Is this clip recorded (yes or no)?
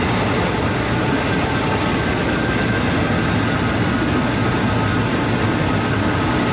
yes